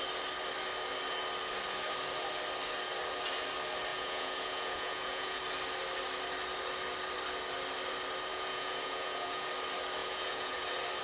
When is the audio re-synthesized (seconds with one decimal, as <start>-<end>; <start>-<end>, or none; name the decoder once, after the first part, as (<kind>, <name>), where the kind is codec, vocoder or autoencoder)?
3.9-5.4 (vocoder, Vocos); 8.3-9.5; 10.0-10.6